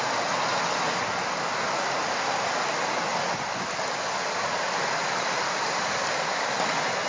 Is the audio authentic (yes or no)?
yes